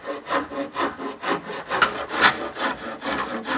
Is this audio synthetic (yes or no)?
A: no